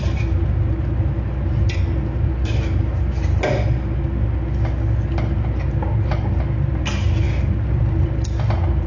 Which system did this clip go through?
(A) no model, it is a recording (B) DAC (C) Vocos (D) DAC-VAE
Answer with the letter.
A